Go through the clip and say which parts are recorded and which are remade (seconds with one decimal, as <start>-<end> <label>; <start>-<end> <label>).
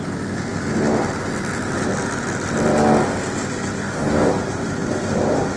0.0-3.8 recorded; 3.8-4.3 remade; 4.3-5.6 recorded